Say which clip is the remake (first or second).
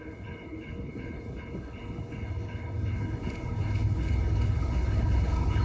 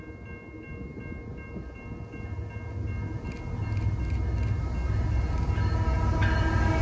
first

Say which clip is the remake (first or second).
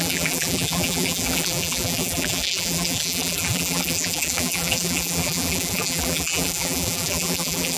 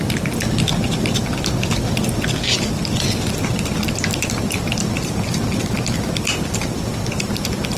first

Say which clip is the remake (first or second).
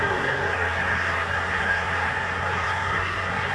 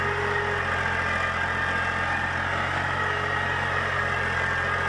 first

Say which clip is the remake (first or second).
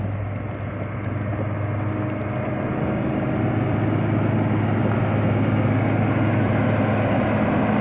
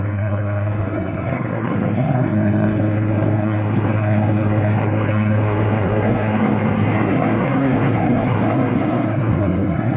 second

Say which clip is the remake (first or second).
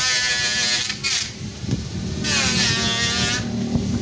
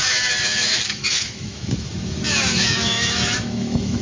second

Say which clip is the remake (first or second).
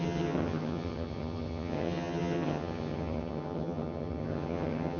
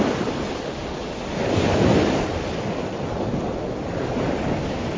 first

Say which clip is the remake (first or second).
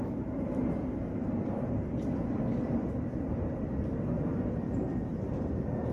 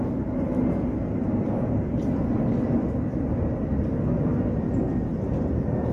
first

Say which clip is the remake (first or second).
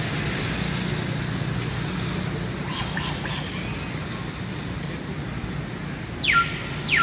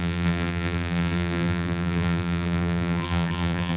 second